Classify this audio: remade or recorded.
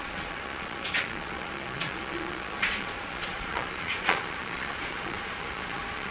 remade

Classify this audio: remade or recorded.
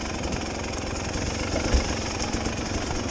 recorded